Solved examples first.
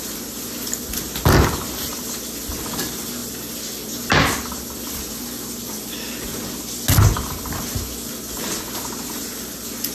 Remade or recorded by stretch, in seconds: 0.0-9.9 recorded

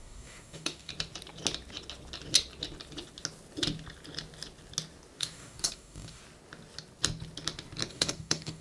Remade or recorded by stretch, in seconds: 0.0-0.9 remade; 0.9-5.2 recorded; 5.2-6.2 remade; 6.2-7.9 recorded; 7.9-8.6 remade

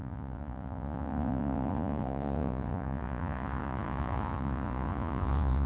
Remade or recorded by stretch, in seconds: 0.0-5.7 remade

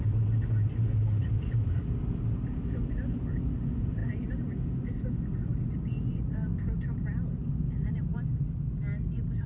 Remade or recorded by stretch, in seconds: 0.0-9.5 recorded